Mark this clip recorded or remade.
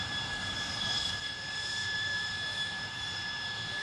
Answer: remade